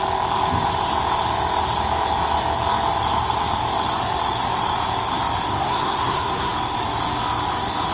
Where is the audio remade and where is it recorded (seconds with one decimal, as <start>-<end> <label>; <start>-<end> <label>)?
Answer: 0.0-5.5 recorded; 5.5-6.5 remade; 6.5-7.9 recorded